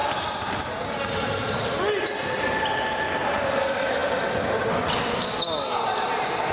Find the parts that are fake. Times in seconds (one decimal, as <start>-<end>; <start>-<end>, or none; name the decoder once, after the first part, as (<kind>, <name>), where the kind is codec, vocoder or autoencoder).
none